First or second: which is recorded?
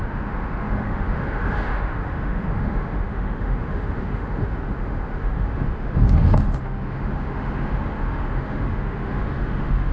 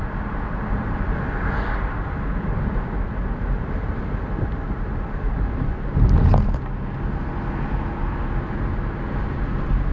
second